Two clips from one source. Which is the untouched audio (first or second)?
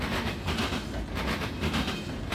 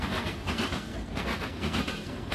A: first